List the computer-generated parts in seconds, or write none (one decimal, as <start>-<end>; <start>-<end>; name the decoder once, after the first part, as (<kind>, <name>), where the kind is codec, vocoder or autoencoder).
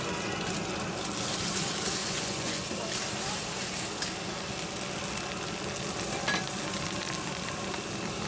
2.0-2.7 (vocoder, Vocos)